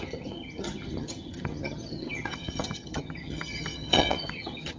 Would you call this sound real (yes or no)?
no